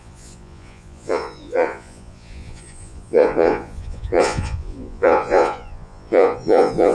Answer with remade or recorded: remade